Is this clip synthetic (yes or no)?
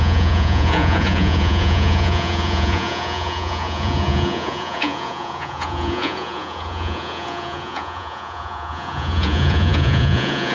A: yes